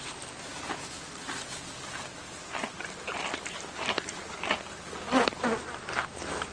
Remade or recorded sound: recorded